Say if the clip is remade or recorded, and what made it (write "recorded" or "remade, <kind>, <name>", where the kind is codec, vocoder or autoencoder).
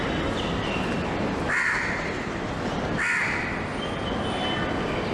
recorded